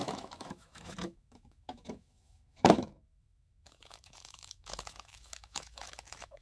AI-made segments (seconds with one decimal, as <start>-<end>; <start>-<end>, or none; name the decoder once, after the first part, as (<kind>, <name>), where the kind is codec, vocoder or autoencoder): 0.0-6.4 (autoencoder, DAC-VAE)